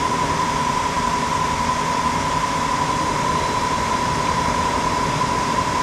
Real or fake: fake